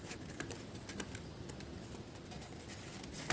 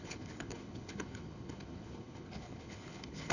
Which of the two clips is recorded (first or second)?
first